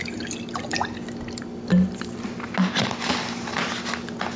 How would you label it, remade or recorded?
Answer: recorded